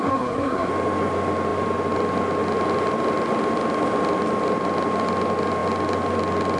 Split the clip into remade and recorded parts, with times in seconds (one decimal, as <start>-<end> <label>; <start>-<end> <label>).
0.0-0.7 remade; 0.7-6.6 recorded